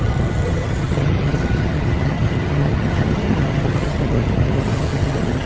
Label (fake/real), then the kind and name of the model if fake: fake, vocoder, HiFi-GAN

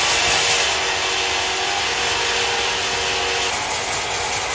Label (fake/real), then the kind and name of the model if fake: real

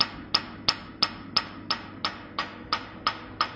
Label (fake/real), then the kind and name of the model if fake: real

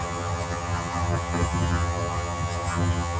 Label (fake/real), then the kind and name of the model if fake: fake, vocoder, HiFi-GAN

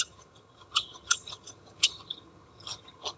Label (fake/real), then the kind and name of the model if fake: fake, vocoder, HiFi-GAN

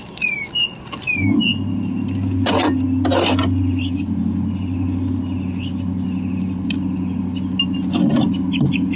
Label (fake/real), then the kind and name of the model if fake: real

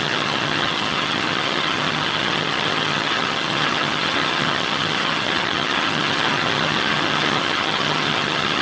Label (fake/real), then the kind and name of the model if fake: fake, vocoder, HiFi-GAN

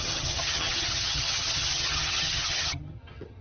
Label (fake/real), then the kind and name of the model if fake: fake, vocoder, HiFi-GAN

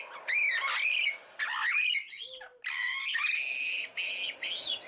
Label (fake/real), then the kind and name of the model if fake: real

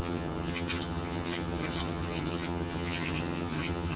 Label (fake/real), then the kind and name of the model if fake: fake, vocoder, HiFi-GAN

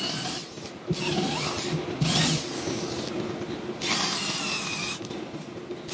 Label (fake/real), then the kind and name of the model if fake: real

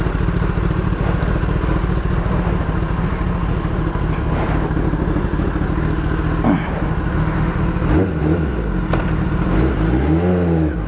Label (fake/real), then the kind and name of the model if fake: real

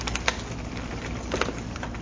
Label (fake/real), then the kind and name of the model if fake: real